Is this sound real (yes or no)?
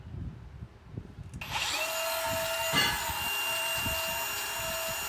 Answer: yes